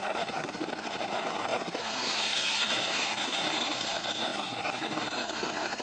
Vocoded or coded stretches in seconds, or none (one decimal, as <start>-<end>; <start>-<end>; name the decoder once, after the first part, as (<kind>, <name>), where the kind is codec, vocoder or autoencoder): 0.0-5.8 (codec, SNAC)